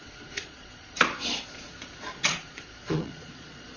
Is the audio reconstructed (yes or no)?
yes